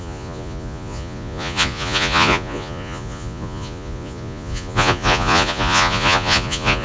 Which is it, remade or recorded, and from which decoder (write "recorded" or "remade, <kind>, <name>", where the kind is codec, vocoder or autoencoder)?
remade, vocoder, Vocos